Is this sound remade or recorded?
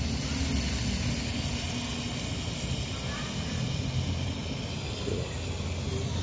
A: recorded